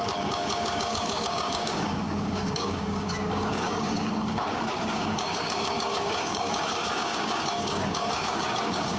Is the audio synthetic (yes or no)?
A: yes